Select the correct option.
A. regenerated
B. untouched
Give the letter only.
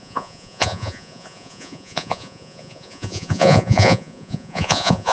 A